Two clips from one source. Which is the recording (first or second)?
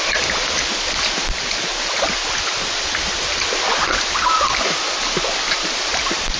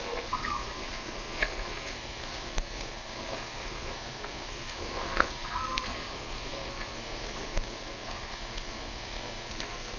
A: first